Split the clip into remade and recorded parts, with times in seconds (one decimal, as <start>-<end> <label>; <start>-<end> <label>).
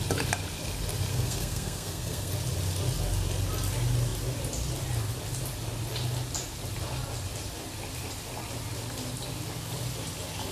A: 0.0-1.1 recorded; 1.1-2.3 remade; 2.3-10.5 recorded